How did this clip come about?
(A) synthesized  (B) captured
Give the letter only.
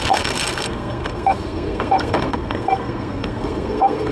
A